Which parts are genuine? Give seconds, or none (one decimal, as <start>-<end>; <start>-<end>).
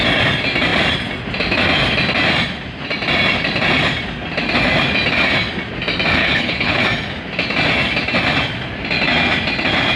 0.0-6.2; 6.8-10.0